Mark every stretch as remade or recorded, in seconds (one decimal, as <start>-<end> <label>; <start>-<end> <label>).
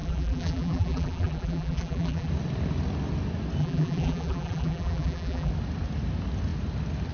0.0-2.3 remade; 2.3-3.6 recorded; 3.6-5.5 remade; 5.5-7.1 recorded